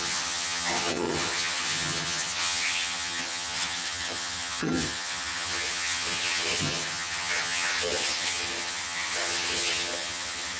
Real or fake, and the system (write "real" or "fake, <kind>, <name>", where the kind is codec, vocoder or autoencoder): fake, vocoder, HiFi-GAN